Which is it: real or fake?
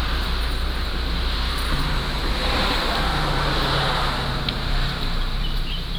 fake